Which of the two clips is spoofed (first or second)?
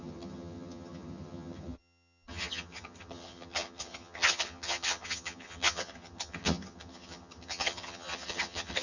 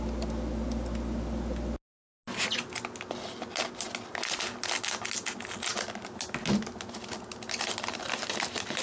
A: first